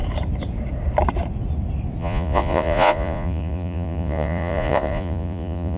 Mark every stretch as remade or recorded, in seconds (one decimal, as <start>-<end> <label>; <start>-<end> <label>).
0.0-2.0 recorded; 2.0-5.8 remade

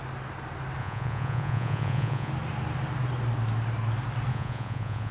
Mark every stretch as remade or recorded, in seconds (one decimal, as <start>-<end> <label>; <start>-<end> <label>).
0.0-0.8 recorded; 0.8-2.3 remade; 2.3-4.3 recorded; 4.3-5.1 remade

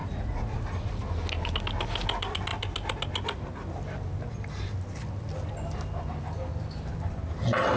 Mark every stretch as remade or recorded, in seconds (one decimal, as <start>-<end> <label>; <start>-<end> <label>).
0.0-0.9 remade; 0.9-7.8 recorded

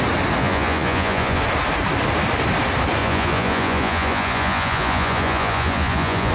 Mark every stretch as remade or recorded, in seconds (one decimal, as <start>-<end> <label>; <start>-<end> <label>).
0.0-0.4 recorded; 0.4-1.4 remade; 1.4-3.0 recorded; 3.0-6.3 remade

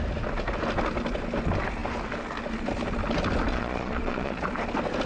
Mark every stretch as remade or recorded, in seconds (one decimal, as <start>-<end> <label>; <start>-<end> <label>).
0.0-3.5 recorded; 3.5-4.4 remade; 4.4-5.1 recorded

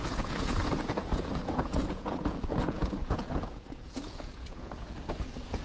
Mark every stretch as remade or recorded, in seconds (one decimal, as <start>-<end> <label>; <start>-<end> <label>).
0.0-5.6 remade

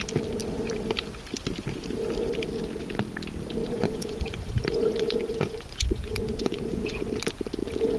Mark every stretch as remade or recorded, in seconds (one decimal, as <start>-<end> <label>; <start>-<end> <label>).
0.0-3.6 recorded; 3.6-7.0 remade; 7.0-8.0 recorded

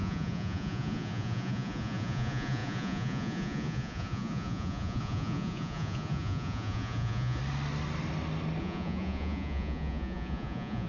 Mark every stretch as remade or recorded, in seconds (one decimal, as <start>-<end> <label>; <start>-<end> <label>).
0.0-7.4 remade; 7.4-8.6 recorded; 8.6-10.9 remade